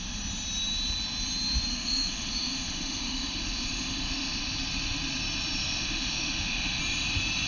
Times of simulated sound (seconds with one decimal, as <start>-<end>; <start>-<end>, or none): 1.7-4.4; 5.6-6.8

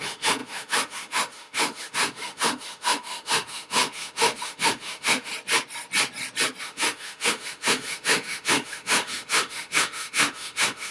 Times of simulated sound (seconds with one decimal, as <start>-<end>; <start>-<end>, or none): 0.0-5.3; 6.6-10.9

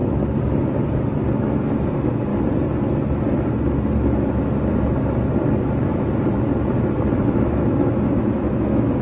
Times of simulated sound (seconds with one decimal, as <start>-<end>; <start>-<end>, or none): 1.4-2.3; 7.3-9.0